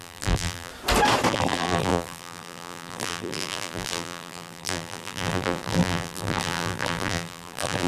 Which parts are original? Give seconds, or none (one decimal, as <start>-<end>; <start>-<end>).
0.7-1.3